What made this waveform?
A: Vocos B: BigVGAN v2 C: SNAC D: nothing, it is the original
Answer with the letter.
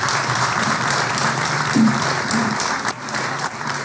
B